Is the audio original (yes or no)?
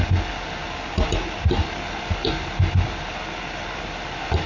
yes